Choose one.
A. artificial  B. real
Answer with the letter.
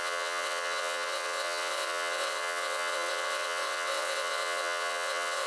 A